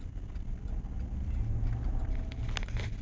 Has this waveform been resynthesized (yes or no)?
no